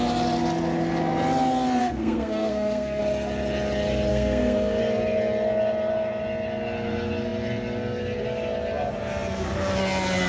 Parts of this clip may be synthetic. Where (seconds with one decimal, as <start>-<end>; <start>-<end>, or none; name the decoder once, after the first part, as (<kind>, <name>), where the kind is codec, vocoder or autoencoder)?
1.8-3.0 (codec, SNAC); 4.1-4.8